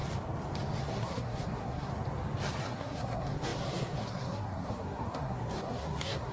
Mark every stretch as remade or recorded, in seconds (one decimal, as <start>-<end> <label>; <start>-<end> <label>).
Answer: 0.0-0.8 recorded; 0.8-1.9 remade; 1.9-2.6 recorded; 2.6-6.3 remade